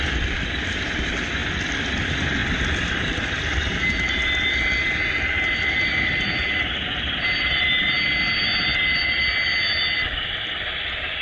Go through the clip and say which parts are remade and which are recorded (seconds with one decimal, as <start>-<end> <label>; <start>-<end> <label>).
0.0-1.4 recorded; 1.4-2.0 remade; 2.0-2.4 recorded; 2.4-3.0 remade; 3.0-11.2 recorded